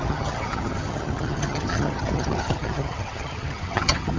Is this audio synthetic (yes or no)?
yes